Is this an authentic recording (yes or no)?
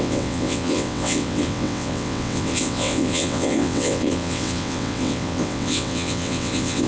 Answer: no